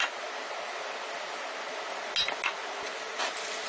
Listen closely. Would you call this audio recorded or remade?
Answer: recorded